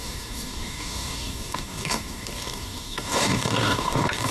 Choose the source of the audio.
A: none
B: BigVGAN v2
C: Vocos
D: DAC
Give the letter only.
D